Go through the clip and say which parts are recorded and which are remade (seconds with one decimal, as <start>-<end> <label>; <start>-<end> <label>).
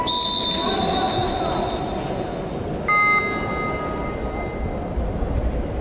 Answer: 0.0-5.8 recorded